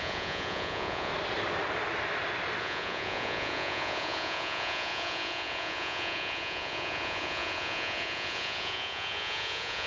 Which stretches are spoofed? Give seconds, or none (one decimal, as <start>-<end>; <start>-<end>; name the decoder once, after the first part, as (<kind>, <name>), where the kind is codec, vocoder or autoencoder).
0.0-1.1 (vocoder, Vocos); 2.6-9.9